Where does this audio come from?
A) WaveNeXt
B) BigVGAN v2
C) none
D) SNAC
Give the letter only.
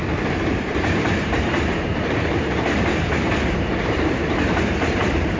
B